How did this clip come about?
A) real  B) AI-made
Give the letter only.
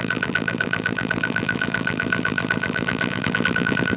B